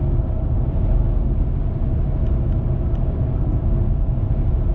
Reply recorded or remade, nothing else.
recorded